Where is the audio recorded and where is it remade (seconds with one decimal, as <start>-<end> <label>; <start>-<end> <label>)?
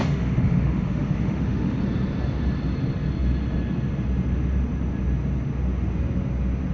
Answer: 0.0-1.8 remade; 1.8-6.7 recorded